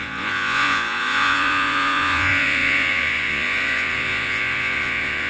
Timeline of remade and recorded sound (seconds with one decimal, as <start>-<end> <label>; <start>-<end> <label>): 0.0-5.3 remade